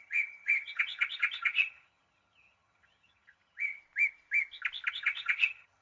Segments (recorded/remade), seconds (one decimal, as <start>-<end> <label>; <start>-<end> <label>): 0.0-3.8 remade; 3.8-4.9 recorded; 4.9-5.8 remade